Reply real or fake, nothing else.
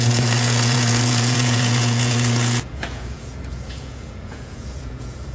fake